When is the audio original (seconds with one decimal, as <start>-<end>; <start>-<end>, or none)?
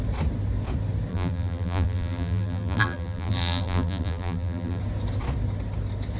0.0-1.1; 4.8-6.2